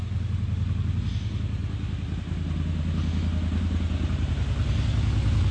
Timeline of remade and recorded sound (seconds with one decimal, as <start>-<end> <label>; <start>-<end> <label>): 0.0-5.5 recorded